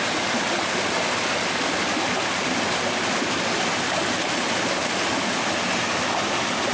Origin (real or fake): real